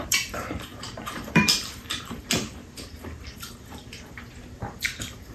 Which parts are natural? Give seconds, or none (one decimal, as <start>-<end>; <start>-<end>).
none